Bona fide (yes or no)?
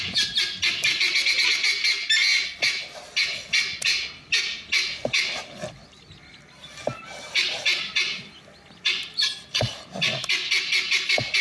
yes